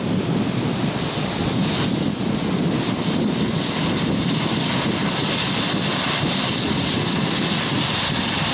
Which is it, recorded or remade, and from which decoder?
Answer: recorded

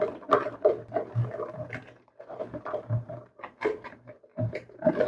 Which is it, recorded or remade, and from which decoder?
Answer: remade, vocoder, BigVGAN v2